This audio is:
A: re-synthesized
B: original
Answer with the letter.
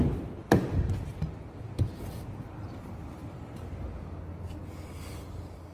B